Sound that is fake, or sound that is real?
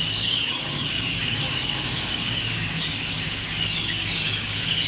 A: fake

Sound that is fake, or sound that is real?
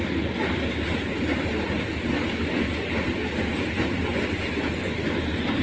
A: real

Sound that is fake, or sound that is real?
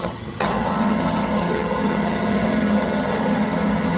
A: fake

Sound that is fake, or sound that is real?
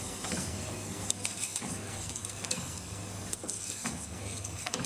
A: fake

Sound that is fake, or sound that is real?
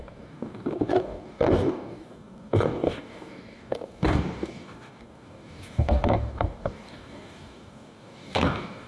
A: fake